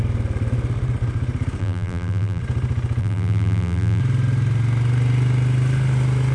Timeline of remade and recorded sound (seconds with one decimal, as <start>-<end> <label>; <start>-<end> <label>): 0.0-1.6 recorded; 1.6-2.4 remade; 2.4-3.0 recorded; 3.0-4.0 remade; 4.0-6.3 recorded